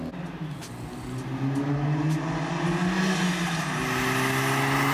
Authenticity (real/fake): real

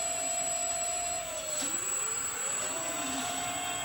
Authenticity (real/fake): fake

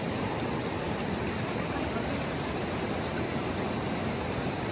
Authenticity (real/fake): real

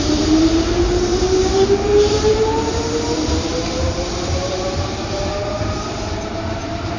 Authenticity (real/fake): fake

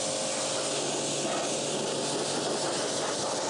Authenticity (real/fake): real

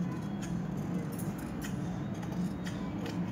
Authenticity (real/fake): real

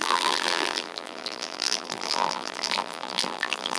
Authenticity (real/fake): fake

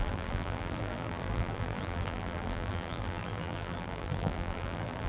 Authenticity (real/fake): fake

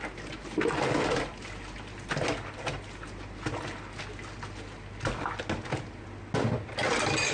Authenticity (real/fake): real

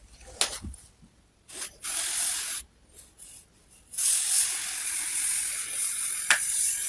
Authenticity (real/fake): real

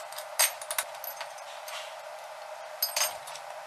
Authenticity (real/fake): real